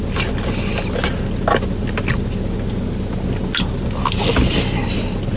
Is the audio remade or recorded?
recorded